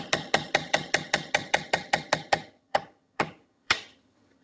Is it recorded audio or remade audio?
remade